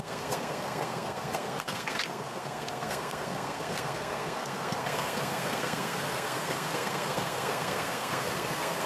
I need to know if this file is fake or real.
fake